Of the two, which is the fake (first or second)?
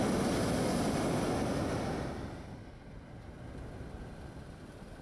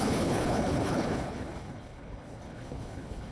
second